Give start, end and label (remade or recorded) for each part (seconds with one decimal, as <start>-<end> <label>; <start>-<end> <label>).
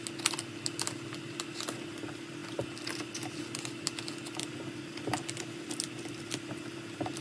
0.0-7.2 recorded